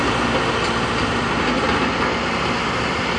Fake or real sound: real